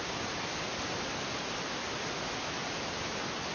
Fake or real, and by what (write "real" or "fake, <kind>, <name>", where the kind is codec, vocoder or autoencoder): real